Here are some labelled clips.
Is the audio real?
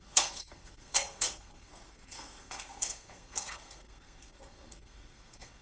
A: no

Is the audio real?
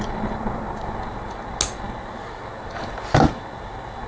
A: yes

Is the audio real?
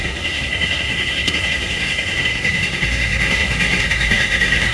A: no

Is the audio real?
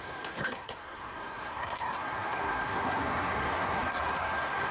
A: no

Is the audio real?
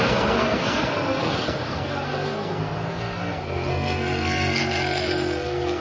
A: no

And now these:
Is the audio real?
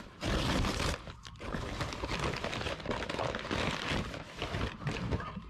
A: yes